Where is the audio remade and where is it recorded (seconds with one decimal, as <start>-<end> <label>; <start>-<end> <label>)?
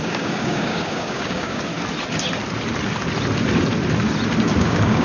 0.0-1.7 remade; 1.7-4.6 recorded; 4.6-5.0 remade